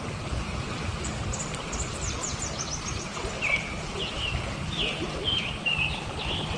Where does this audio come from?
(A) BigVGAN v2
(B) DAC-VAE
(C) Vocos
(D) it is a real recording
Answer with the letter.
D